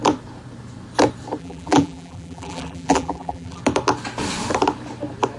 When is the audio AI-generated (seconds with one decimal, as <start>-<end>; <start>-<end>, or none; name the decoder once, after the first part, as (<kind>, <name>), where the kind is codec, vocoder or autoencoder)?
1.4-3.6 (vocoder, BigVGAN v2)

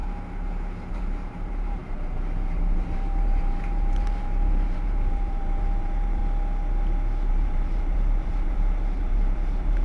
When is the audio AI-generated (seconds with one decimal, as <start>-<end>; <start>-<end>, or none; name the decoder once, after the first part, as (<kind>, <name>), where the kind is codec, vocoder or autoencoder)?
0.9-6.2 (vocoder, BigVGAN v2); 7.3-9.8